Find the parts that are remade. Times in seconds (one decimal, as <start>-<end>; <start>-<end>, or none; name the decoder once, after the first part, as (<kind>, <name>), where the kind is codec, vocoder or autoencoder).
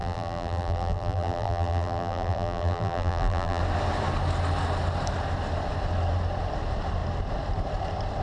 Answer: 0.0-3.6 (vocoder, BigVGAN v2)